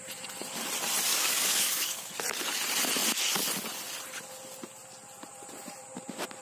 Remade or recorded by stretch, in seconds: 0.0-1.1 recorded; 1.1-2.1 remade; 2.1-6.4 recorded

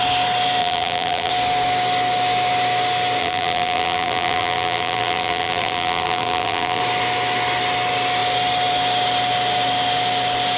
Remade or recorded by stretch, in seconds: 0.0-0.6 recorded; 0.6-1.3 remade; 1.3-3.2 recorded; 3.2-6.8 remade; 6.8-10.6 recorded

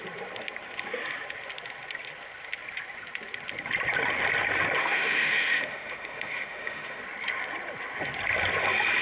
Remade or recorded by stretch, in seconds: 0.0-4.8 recorded; 4.8-7.0 remade; 7.0-9.0 recorded

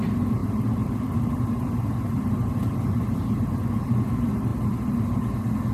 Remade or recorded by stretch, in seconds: 0.0-0.4 recorded; 0.4-1.3 remade; 1.3-5.7 recorded

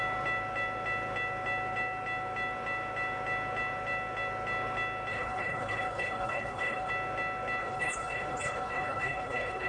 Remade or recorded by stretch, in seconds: 0.0-5.1 recorded; 5.1-6.9 remade; 6.9-7.6 recorded; 7.6-9.7 remade

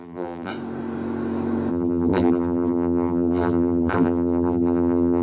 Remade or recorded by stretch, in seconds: 0.0-0.5 remade; 0.5-1.7 recorded; 1.7-5.2 remade